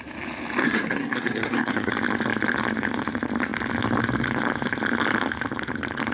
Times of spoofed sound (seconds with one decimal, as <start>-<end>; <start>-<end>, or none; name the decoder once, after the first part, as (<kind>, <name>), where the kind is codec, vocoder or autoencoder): 0.6-1.9 (codec, SNAC)